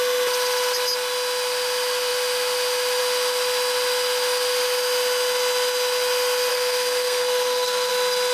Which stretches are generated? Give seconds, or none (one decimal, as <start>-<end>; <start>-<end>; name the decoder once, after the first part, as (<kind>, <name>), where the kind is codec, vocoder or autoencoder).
6.5-7.9 (codec, SNAC)